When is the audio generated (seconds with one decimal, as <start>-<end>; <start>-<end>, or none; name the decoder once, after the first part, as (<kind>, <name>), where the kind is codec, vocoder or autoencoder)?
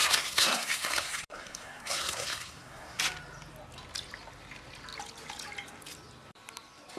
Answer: 0.0-3.0 (codec, SNAC)